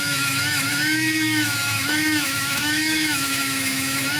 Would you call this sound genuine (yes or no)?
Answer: no